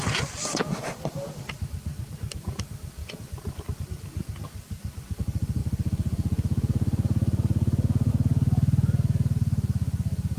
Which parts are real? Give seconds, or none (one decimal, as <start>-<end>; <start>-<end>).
0.0-1.9; 2.4-5.6; 8.1-10.4